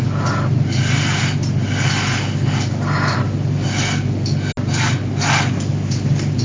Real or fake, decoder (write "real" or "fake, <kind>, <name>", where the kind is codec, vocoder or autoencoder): real